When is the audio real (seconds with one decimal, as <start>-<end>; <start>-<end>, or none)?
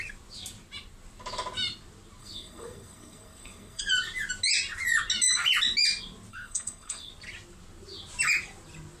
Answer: 0.0-2.2; 3.8-6.3; 7.1-9.0